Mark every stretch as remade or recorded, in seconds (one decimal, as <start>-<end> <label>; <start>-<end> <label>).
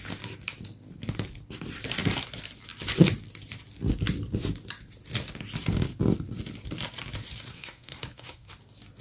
0.0-7.5 recorded; 7.5-8.5 remade; 8.5-9.0 recorded